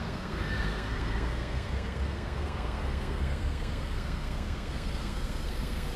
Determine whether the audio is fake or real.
fake